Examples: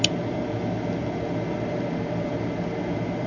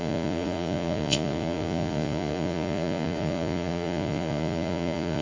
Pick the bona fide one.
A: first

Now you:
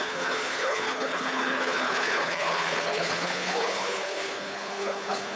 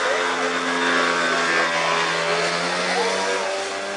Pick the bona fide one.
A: second